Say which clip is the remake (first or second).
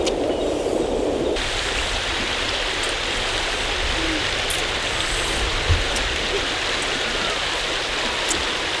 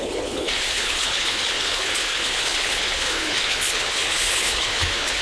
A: second